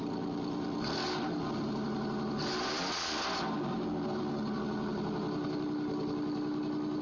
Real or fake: real